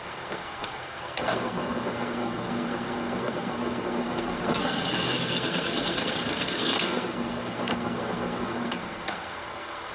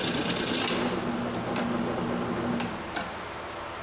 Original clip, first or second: second